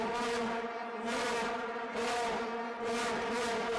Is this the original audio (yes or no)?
yes